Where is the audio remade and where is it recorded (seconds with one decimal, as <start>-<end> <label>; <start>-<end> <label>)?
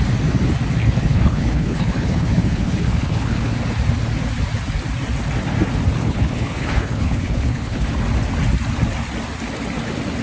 0.0-0.8 recorded; 0.8-3.6 remade; 3.6-6.0 recorded; 6.0-7.9 remade; 7.9-10.2 recorded